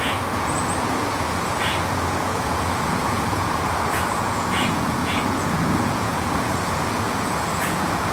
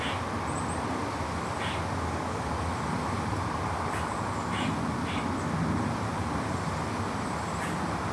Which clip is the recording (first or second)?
second